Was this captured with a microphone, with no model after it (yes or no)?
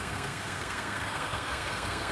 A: no